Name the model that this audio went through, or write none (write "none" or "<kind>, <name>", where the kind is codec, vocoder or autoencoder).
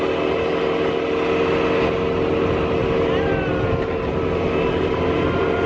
none